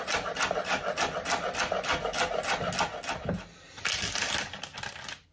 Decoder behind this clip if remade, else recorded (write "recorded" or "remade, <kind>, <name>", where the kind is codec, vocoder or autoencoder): recorded